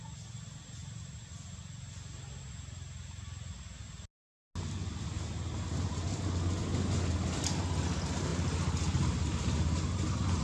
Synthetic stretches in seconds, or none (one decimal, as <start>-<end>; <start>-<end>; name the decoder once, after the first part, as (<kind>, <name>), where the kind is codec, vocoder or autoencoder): 0.8-1.6 (vocoder, BigVGAN v2)